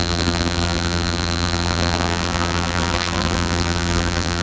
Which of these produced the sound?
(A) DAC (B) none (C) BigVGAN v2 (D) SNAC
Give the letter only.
C